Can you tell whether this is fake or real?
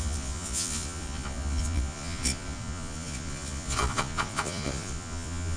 fake